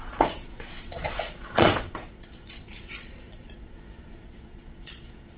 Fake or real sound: fake